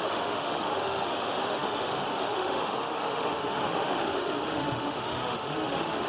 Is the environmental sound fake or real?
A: fake